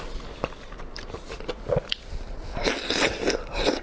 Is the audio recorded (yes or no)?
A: yes